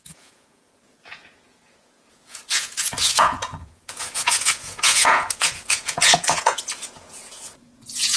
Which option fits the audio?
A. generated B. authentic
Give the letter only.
A